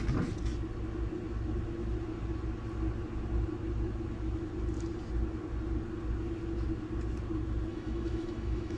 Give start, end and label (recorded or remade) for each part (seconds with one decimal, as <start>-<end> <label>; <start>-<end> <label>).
0.0-7.7 recorded; 7.7-8.8 remade